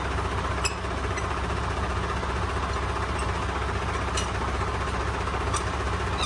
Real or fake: real